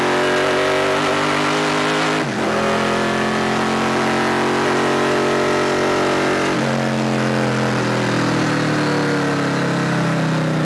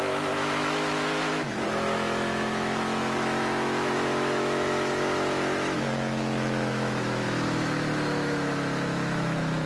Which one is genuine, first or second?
first